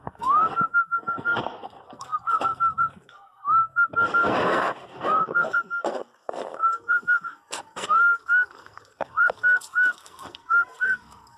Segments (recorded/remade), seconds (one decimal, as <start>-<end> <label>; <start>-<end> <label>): 0.0-11.4 remade